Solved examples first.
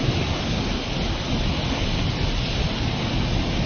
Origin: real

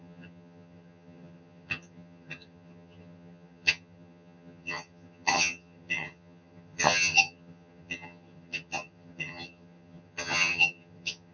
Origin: fake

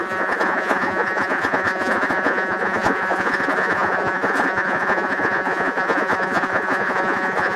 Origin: fake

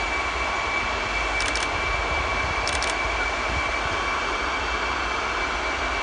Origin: real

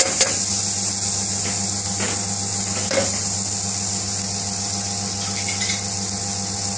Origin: real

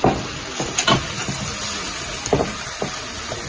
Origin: real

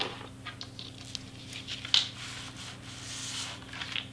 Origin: real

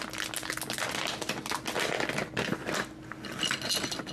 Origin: real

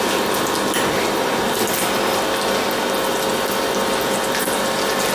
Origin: real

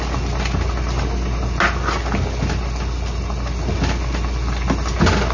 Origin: real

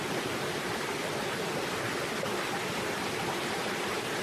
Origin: real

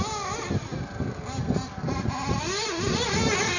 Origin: real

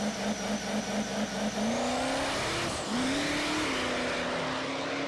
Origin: real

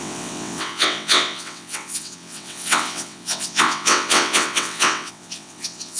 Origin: fake